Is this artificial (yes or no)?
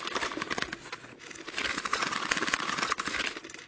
no